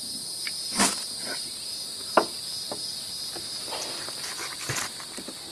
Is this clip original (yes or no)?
yes